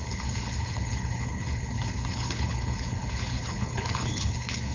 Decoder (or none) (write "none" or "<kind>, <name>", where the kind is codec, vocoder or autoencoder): codec, HILCodec